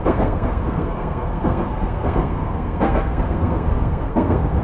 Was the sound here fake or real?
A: fake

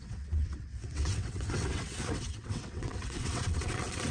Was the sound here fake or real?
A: fake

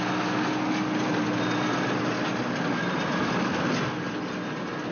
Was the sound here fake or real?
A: real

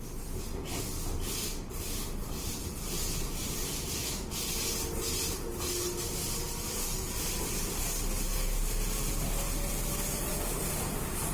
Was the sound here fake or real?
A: real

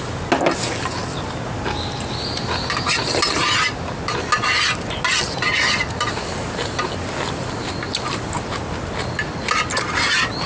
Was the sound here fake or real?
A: real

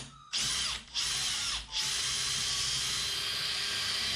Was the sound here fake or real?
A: real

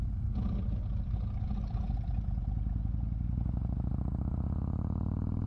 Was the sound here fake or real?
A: real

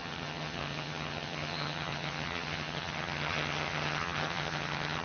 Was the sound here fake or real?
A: fake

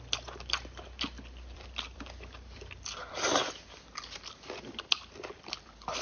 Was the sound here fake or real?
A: fake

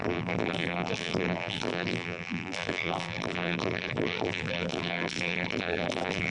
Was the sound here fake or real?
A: fake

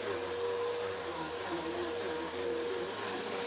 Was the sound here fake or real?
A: real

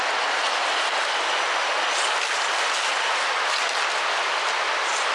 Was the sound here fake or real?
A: real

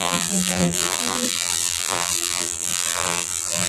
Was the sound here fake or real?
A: fake